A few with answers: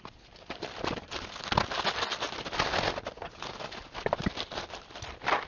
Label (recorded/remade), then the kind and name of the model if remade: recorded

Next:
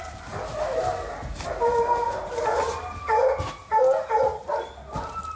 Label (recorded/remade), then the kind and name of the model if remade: recorded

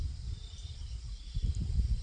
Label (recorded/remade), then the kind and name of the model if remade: recorded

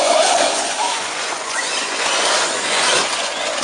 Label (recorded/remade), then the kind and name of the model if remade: remade, vocoder, Vocos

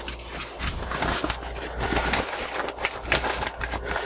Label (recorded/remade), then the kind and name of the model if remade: recorded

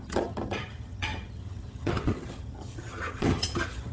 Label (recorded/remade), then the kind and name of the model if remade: remade, vocoder, HiFi-GAN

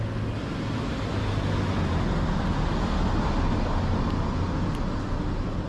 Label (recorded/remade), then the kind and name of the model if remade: recorded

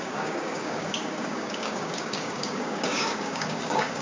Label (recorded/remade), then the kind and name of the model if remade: remade, codec, DAC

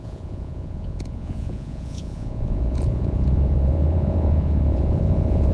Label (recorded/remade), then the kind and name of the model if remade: remade, vocoder, Vocos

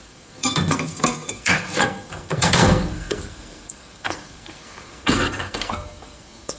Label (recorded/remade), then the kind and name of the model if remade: remade, codec, SNAC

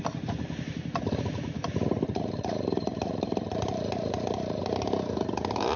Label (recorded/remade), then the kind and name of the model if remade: remade, vocoder, BigVGAN v2